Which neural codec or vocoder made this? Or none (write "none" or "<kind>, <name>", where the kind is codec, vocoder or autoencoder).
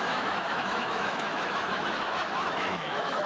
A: autoencoder, DAC-VAE